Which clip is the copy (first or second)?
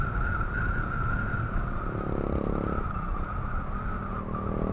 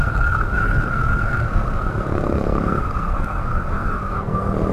second